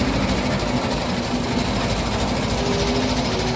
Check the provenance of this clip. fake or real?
real